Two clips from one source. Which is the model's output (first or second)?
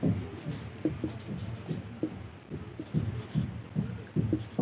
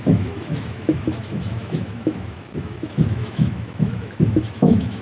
second